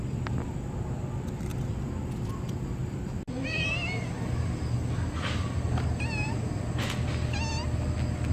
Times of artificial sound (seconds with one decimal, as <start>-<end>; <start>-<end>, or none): none